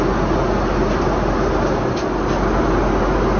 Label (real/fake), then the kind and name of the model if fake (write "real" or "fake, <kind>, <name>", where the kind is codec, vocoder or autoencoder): real